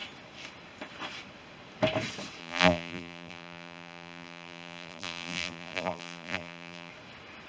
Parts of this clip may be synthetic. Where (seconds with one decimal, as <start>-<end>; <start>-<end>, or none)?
2.4-6.9